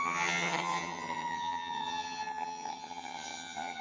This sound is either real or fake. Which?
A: fake